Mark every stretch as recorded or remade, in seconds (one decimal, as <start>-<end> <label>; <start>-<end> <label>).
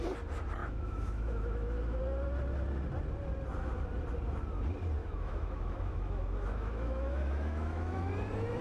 0.0-0.6 recorded; 0.6-2.0 remade; 2.0-5.0 recorded; 5.0-8.1 remade; 8.1-8.6 recorded